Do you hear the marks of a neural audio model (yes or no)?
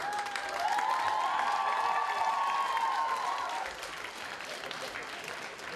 no